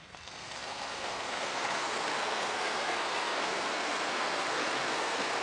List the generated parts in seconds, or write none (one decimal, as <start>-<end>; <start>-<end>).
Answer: 0.0-5.4